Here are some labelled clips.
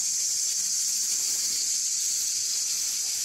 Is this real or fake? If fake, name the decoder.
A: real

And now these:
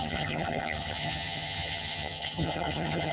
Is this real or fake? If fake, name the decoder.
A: fake, vocoder, HiFi-GAN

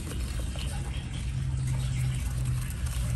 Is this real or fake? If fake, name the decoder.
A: real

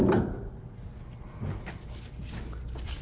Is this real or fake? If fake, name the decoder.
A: real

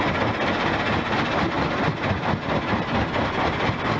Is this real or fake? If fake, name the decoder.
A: real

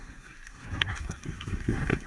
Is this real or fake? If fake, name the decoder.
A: fake, codec, SNAC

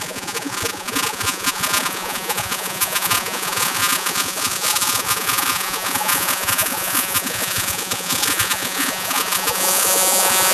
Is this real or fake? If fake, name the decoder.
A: fake, vocoder, Vocos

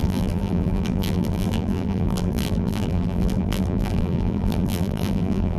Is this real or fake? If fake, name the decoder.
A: fake, vocoder, BigVGAN v2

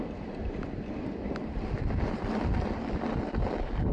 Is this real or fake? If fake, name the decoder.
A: real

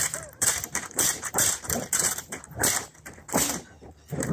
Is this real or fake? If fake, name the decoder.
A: fake, vocoder, BigVGAN v2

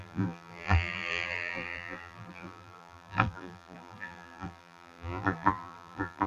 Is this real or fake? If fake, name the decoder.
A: fake, vocoder, BigVGAN v2